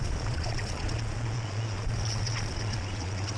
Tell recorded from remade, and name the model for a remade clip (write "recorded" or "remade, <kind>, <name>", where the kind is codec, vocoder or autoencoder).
remade, vocoder, Vocos